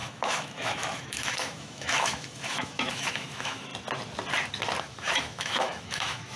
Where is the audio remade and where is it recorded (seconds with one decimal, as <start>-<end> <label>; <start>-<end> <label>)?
0.0-3.7 remade; 3.7-4.8 recorded; 4.8-6.4 remade